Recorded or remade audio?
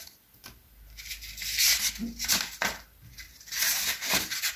recorded